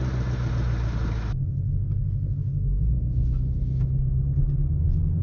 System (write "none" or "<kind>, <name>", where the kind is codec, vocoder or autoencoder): none